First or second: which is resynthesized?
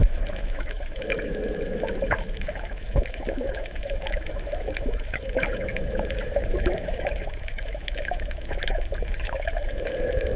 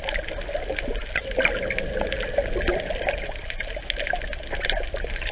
first